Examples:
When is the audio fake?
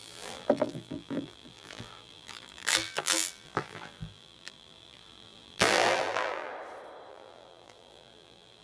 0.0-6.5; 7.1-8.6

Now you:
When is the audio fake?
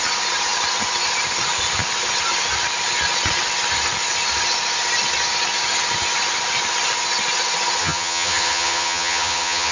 7.8-9.7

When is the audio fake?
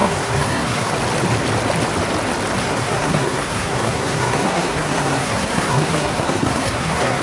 0.0-0.9; 2.6-7.2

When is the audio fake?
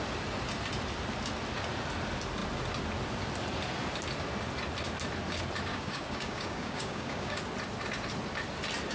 5.7-7.4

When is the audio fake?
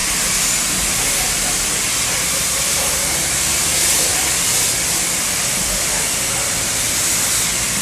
4.1-6.9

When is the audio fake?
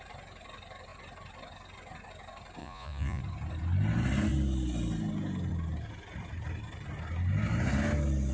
2.6-3.2